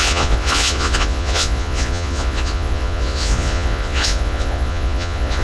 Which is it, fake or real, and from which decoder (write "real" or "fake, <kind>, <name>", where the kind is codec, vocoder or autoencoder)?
fake, vocoder, Vocos